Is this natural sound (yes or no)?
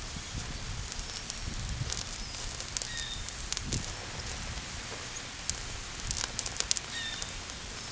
yes